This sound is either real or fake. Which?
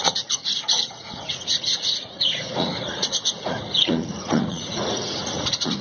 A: fake